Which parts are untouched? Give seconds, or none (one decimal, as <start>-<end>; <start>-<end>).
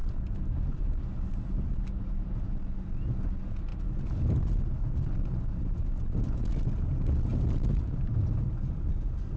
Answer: 0.0-7.3